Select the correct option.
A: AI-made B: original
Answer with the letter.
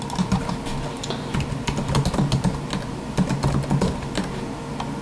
B